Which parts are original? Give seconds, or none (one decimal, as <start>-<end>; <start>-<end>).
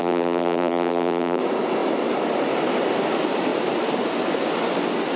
1.4-5.2